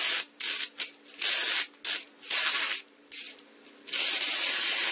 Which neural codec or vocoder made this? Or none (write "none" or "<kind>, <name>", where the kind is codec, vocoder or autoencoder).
none